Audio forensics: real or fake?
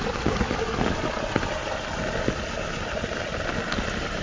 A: real